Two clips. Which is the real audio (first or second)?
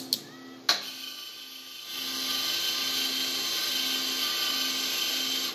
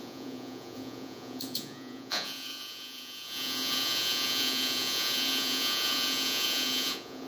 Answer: first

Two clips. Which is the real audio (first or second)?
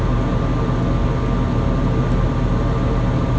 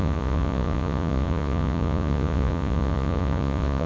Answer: first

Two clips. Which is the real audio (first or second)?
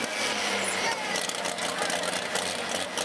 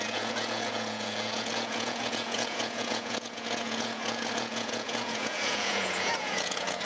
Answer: first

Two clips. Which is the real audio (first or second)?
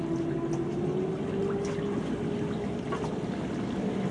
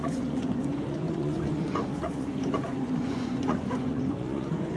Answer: first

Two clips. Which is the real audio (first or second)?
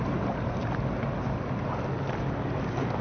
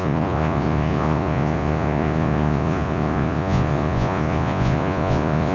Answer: first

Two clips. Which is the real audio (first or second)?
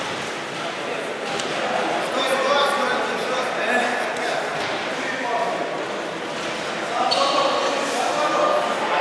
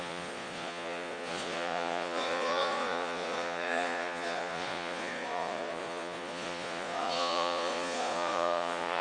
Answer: first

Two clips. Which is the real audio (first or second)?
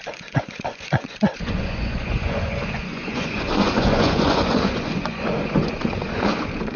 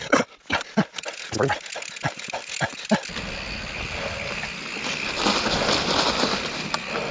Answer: second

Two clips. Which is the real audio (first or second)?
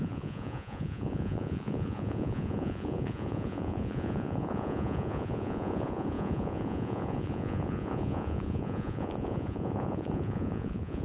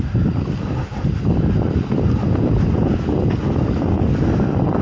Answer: second